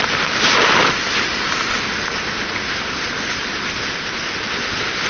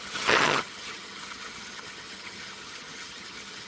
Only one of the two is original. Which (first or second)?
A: first